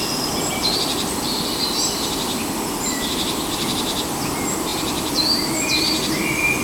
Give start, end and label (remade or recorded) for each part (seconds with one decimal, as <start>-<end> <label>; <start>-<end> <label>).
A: 0.0-6.6 remade

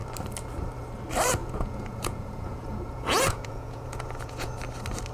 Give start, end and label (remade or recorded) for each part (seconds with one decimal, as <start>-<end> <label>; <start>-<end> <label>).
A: 0.0-1.4 recorded; 1.4-4.5 remade; 4.5-5.1 recorded

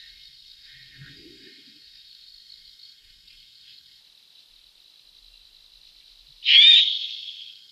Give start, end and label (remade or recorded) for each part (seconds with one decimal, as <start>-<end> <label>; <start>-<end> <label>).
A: 0.0-4.0 remade; 4.0-6.8 recorded; 6.8-7.7 remade

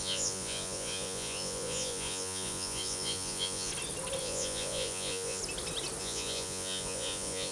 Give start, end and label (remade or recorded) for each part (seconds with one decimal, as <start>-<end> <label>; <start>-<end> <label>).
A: 0.0-3.7 remade; 3.7-4.2 recorded; 4.2-5.4 remade; 5.4-6.0 recorded; 6.0-7.5 remade

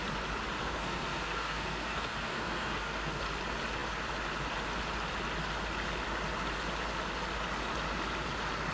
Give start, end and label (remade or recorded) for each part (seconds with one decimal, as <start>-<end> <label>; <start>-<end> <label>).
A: 0.0-0.6 recorded; 0.6-3.2 remade; 3.2-8.7 recorded